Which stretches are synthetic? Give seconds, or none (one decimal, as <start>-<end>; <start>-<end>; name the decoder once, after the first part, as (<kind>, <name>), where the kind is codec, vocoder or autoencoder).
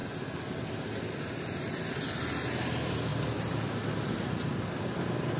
none